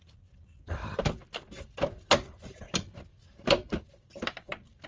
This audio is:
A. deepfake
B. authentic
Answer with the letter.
A